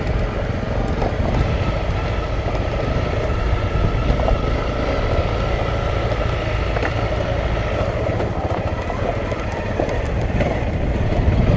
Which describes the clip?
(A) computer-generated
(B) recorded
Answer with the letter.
B